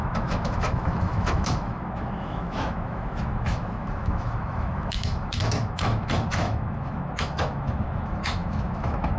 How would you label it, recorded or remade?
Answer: remade